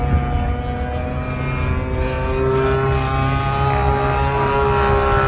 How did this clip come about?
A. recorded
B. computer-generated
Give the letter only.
A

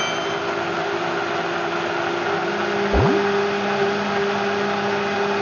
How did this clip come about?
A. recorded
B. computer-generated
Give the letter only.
A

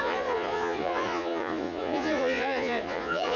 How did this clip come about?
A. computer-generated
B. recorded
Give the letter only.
A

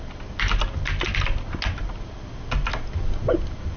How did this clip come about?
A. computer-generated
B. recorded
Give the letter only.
B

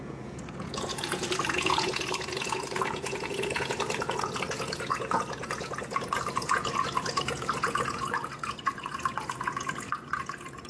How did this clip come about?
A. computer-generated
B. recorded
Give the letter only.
A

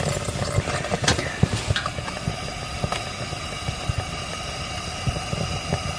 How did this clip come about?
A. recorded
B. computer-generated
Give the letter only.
A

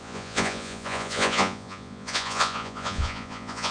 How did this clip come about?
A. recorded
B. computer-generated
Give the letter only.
B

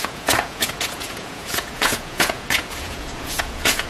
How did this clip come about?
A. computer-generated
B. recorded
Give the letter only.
A